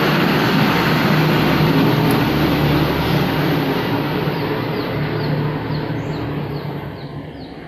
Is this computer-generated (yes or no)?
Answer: no